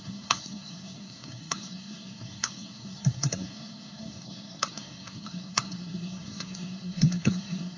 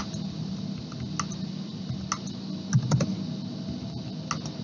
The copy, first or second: first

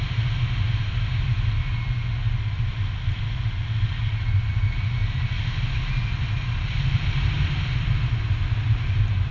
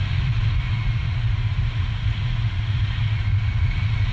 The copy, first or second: second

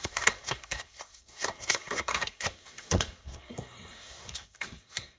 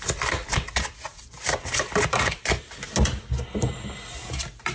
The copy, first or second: first